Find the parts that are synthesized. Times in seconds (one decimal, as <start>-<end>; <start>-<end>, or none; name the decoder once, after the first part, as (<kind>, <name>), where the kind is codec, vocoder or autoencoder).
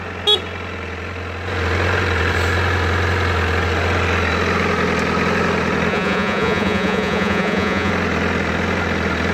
5.9-7.9 (vocoder, Vocos)